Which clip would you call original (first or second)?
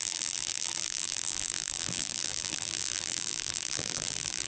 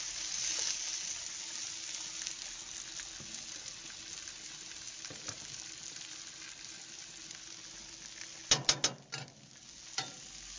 second